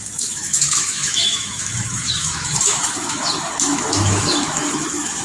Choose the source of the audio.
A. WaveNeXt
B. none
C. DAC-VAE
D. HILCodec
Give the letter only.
C